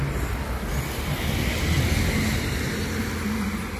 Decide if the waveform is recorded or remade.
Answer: recorded